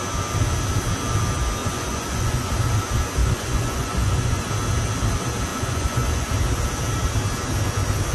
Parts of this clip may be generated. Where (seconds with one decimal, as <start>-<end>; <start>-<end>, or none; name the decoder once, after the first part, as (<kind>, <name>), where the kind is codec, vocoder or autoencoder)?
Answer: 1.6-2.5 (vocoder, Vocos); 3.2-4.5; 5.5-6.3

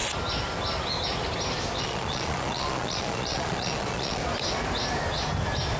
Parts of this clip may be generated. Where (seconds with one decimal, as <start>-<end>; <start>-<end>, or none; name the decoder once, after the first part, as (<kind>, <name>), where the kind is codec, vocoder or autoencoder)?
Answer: 1.8-4.2 (vocoder, Vocos)

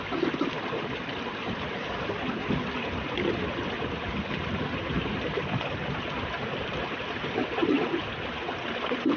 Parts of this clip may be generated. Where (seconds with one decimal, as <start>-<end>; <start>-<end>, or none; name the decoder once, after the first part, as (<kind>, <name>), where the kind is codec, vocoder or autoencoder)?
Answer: none

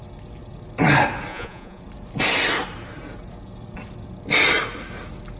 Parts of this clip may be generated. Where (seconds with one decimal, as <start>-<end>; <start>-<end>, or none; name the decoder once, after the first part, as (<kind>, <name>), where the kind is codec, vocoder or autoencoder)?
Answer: 1.3-1.8 (vocoder, Vocos)